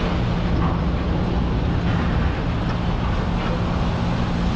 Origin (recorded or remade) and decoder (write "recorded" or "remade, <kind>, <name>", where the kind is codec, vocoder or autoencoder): recorded